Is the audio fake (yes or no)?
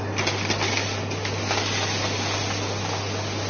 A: no